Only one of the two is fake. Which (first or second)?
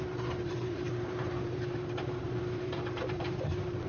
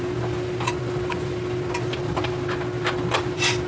first